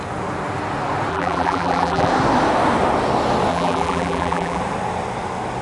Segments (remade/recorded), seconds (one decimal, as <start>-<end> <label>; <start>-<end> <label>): 0.0-1.1 recorded; 1.1-2.1 remade; 2.1-3.5 recorded; 3.5-4.6 remade; 4.6-5.6 recorded